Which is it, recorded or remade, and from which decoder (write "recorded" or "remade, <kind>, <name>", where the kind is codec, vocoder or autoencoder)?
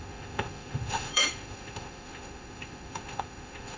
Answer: remade, autoencoder, DAC-VAE